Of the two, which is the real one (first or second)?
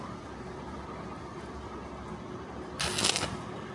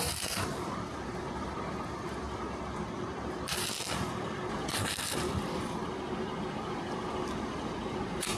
first